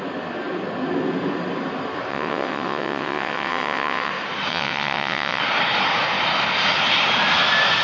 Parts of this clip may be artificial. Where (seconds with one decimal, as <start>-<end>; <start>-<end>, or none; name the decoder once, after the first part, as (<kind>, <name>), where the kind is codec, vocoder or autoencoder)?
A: 2.1-4.1 (vocoder, WaveNeXt); 4.5-5.4